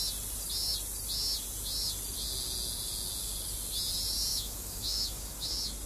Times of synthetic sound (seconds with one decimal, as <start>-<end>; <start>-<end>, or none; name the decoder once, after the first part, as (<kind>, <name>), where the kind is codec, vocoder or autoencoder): 4.3-5.5 (autoencoder, DAC-VAE)